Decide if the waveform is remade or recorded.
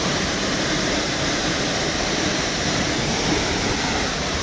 remade